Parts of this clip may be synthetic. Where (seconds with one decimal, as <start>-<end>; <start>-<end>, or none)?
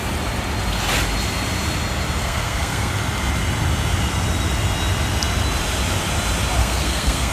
2.2-2.9; 6.6-7.3